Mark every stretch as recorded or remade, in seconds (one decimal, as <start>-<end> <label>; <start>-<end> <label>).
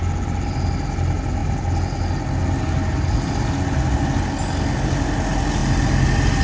0.0-6.4 recorded